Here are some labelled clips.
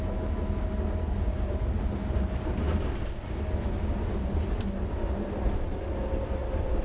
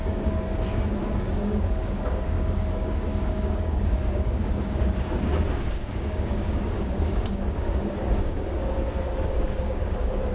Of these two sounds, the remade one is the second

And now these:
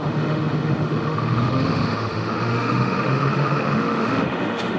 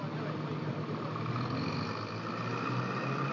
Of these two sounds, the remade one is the first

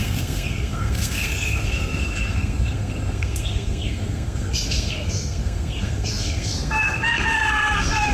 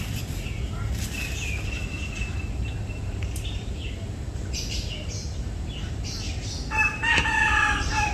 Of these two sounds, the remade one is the first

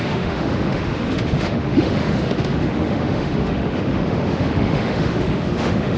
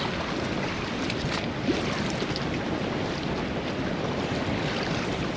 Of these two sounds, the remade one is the first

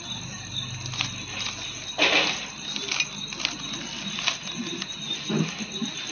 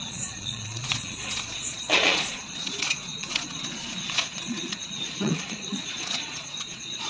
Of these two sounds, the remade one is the second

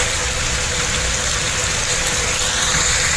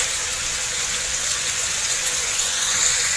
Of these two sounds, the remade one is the second